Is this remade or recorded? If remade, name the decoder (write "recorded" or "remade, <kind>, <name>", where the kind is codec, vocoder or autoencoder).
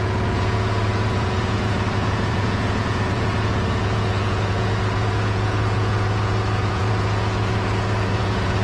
remade, vocoder, Vocos